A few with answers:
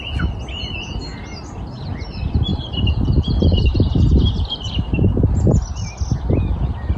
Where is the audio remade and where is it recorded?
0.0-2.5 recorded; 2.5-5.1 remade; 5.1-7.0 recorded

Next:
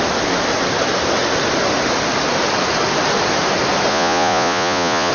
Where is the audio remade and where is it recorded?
0.0-3.9 recorded; 3.9-5.1 remade

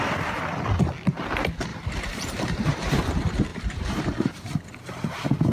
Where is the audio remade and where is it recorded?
0.0-1.7 recorded; 1.7-3.0 remade; 3.0-3.5 recorded; 3.5-4.6 remade; 4.6-5.5 recorded

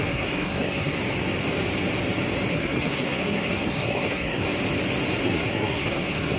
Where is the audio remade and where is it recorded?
0.0-1.0 remade; 1.0-2.5 recorded; 2.5-4.4 remade; 4.4-5.2 recorded; 5.2-6.4 remade

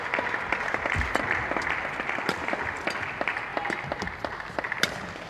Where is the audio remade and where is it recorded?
0.0-5.3 recorded

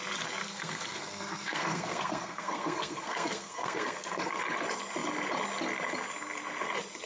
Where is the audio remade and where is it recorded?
0.0-0.4 recorded; 0.4-4.4 remade; 4.4-7.1 recorded